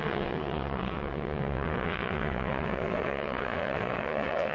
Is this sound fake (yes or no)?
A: yes